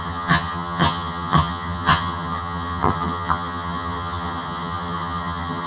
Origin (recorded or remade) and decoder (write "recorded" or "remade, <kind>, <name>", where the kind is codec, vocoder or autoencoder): remade, vocoder, HiFi-GAN